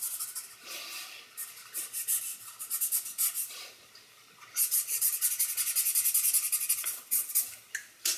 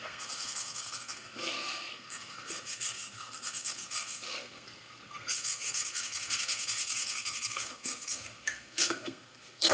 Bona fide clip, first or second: first